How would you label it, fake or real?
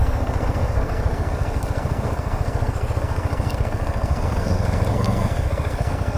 fake